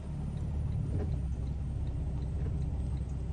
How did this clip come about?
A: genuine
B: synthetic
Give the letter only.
A